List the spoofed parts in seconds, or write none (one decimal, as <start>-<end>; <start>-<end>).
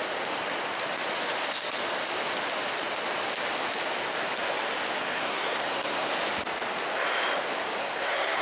5.0-6.1; 7.8-8.4